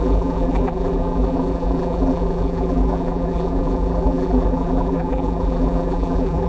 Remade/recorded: remade